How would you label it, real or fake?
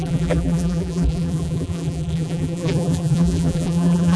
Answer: fake